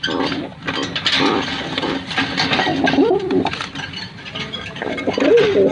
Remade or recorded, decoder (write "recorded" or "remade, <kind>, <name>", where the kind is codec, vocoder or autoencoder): recorded